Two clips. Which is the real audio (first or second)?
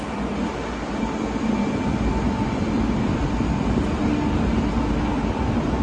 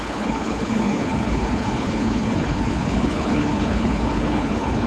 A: first